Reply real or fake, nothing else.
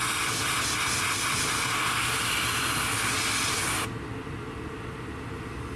real